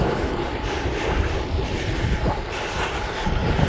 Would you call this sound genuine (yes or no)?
no